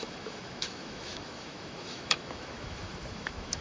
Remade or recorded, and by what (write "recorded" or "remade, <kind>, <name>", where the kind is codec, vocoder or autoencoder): remade, autoencoder, DAC-VAE